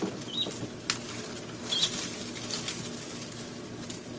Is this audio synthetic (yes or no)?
no